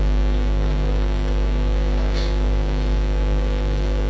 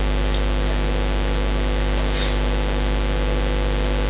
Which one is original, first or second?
second